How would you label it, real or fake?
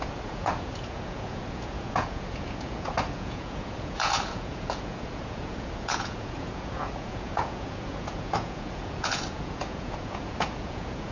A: fake